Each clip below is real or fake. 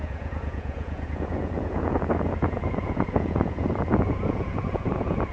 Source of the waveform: fake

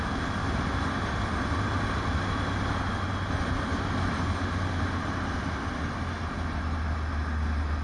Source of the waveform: real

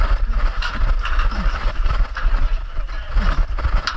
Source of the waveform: real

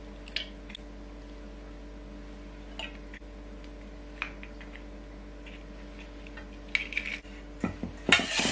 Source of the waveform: real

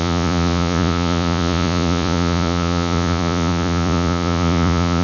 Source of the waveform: fake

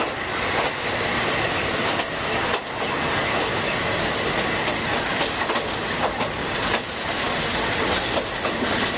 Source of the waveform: real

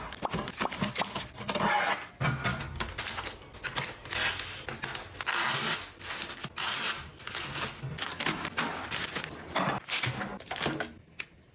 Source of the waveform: real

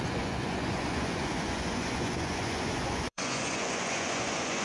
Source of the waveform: fake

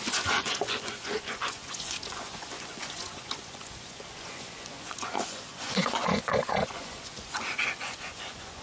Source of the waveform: fake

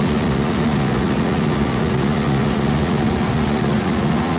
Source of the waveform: fake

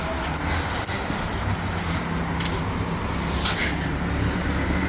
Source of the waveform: real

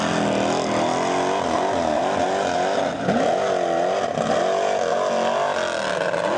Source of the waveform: real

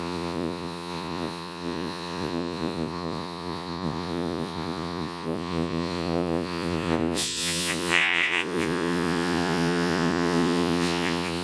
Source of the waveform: fake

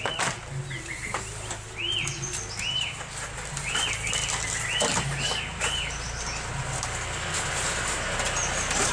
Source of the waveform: real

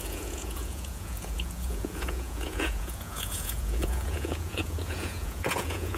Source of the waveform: fake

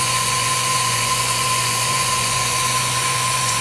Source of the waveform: fake